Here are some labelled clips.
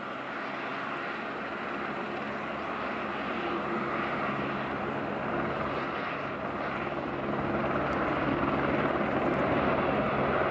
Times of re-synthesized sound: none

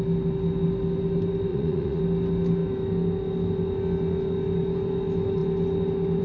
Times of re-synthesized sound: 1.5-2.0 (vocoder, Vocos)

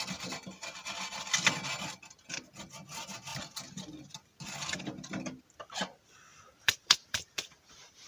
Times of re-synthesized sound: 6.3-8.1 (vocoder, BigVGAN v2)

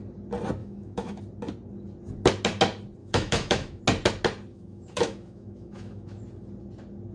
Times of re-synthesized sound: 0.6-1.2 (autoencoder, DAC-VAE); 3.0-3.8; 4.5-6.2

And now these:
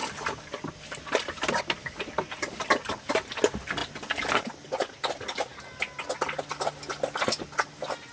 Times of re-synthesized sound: none

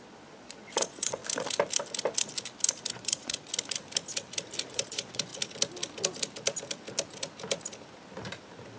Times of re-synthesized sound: 0.0-1.2 (vocoder, Vocos); 2.9-3.5; 4.7-5.3